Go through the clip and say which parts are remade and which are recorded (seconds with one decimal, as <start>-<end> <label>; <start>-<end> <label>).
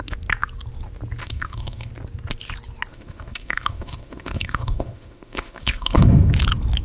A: 0.0-1.2 recorded; 1.2-1.9 remade; 1.9-2.9 recorded; 2.9-6.3 remade; 6.3-6.8 recorded